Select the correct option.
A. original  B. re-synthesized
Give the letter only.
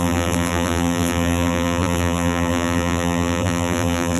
B